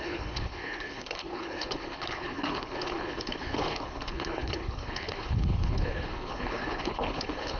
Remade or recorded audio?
remade